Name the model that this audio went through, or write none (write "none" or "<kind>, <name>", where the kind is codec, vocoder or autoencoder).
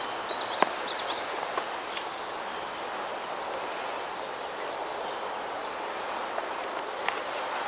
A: none